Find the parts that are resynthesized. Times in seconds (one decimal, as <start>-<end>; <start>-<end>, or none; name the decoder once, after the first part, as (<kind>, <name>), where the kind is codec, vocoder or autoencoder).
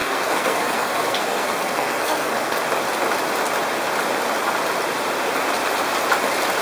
0.0-2.6 (codec, SNAC)